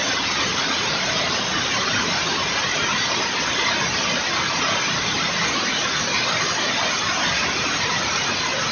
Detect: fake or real real